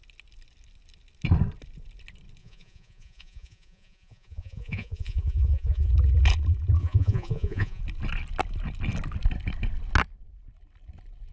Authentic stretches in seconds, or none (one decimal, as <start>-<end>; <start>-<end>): 0.0-2.4; 5.9-6.8; 7.8-11.3